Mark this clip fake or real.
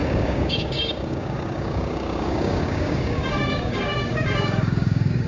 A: fake